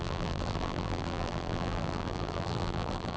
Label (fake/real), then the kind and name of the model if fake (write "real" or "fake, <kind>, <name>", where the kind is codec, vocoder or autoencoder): fake, vocoder, BigVGAN v2